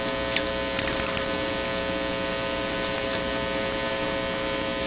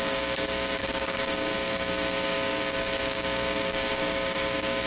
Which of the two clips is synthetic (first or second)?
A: second